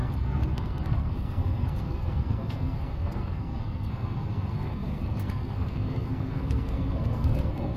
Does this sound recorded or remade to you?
remade